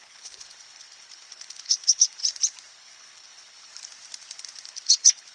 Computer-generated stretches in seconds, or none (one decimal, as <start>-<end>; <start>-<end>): 0.0-2.2; 2.7-3.7; 4.7-5.3